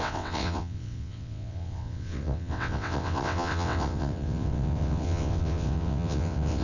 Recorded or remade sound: remade